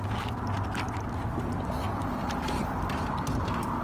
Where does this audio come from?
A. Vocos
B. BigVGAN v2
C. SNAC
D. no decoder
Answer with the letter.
D